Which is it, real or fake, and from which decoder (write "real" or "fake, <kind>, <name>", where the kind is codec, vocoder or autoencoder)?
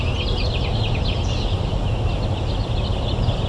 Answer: real